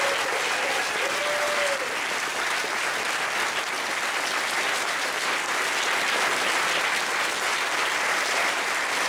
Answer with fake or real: real